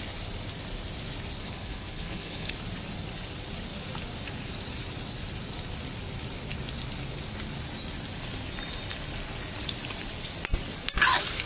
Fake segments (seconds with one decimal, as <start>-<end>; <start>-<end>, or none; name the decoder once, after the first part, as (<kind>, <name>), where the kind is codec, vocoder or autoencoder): 1.4-2.5 (codec, HILCodec)